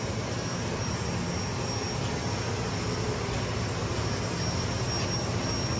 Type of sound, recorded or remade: recorded